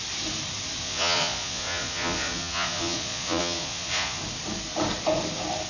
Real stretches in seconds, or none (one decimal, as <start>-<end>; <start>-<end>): 0.0-0.8; 4.2-5.7